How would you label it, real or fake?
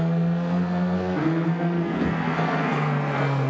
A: fake